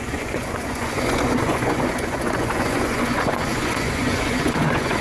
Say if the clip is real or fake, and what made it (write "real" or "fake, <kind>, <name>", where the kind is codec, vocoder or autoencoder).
fake, vocoder, Vocos